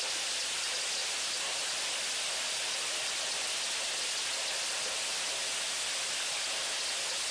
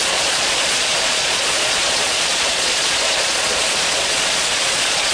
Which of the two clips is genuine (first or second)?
first